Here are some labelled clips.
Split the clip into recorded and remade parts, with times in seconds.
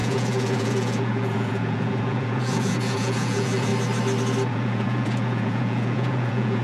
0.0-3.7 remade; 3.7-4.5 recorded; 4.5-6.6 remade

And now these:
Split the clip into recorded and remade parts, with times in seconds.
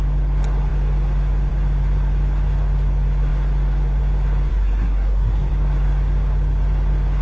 0.0-4.5 recorded; 4.5-5.5 remade; 5.5-7.2 recorded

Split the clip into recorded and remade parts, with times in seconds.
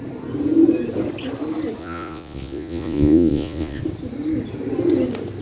0.0-1.8 recorded; 1.8-3.8 remade; 3.8-5.4 recorded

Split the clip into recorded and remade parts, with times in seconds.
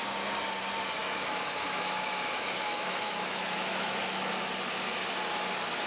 0.0-1.0 recorded; 1.0-4.5 remade; 4.5-5.9 recorded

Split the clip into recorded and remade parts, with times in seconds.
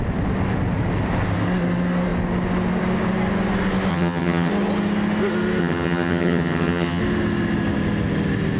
0.0-3.9 recorded; 3.9-4.5 remade; 4.5-5.6 recorded; 5.6-7.0 remade; 7.0-8.6 recorded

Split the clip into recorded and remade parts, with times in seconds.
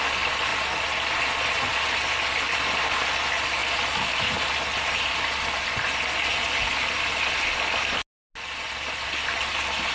0.0-9.9 recorded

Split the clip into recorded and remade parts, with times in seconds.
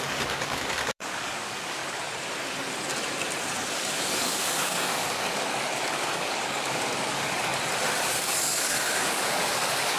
0.0-1.8 remade; 1.8-3.7 recorded; 3.7-7.5 remade; 7.5-8.1 recorded; 8.1-10.0 remade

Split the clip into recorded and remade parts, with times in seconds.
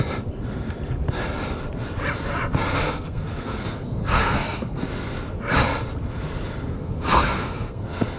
0.0-2.7 recorded; 2.7-4.8 remade; 4.8-6.7 recorded; 6.7-8.2 remade